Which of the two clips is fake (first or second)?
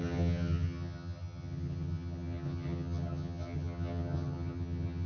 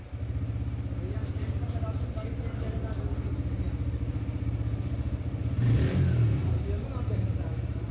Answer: first